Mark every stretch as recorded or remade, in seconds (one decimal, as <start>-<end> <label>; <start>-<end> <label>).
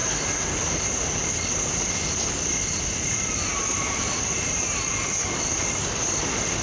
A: 0.0-0.8 remade; 0.8-3.5 recorded; 3.5-4.9 remade; 4.9-6.6 recorded